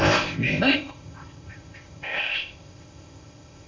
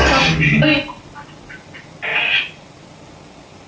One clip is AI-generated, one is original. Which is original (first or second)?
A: second